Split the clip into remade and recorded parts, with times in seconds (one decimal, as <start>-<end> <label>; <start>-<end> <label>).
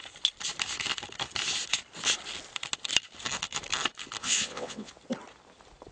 0.0-4.2 recorded; 4.2-4.9 remade; 4.9-5.9 recorded